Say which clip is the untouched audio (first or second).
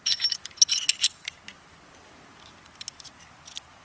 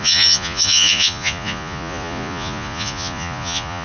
first